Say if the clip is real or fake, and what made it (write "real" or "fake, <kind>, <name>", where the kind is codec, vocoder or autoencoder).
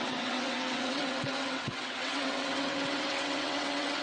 fake, vocoder, WaveNeXt